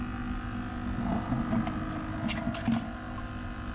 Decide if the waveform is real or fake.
real